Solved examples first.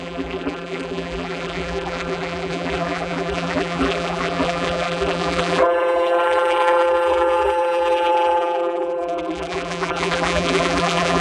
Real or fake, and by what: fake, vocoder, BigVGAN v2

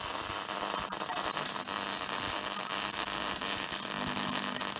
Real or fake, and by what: real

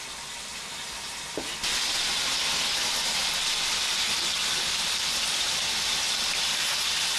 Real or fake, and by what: real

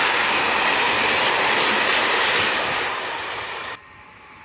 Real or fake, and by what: fake, vocoder, BigVGAN v2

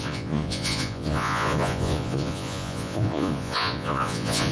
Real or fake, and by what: fake, vocoder, Vocos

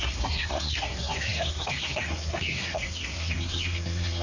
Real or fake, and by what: fake, codec, SNAC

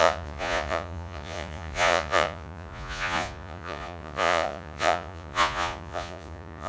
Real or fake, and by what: fake, vocoder, Vocos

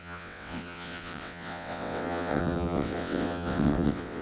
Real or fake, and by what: fake, vocoder, WaveNeXt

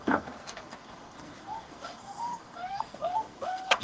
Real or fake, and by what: fake, codec, SNAC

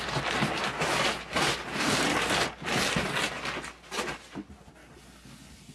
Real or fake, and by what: real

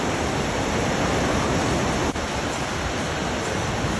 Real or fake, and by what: real